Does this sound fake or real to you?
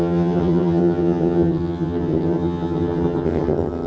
fake